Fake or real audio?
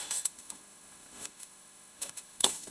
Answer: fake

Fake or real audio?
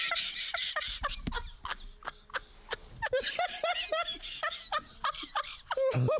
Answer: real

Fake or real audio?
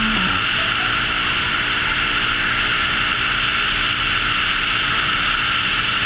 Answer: real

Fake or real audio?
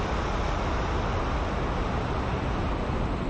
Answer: real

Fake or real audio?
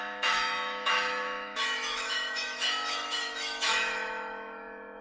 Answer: fake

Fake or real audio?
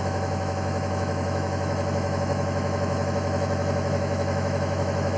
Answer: fake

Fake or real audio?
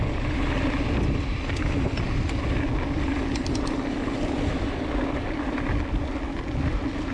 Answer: real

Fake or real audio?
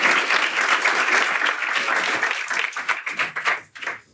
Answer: real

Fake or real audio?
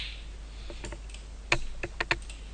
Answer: real